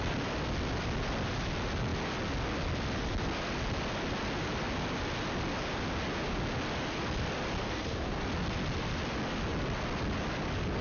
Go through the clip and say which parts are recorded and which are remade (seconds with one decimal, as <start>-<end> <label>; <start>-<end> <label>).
0.0-7.6 recorded; 7.6-8.2 remade; 8.2-10.8 recorded